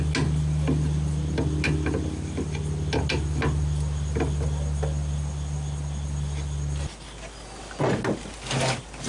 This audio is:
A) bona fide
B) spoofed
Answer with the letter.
A